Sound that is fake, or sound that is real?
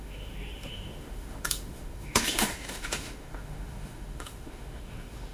fake